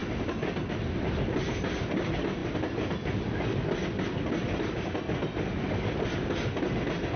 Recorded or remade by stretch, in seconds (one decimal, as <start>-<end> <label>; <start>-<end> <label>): 0.0-7.2 recorded